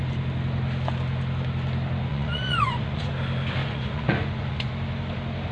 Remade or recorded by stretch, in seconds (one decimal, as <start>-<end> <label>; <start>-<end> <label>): 0.0-2.1 recorded; 2.1-3.1 remade; 3.1-3.6 recorded; 3.6-4.7 remade; 4.7-5.5 recorded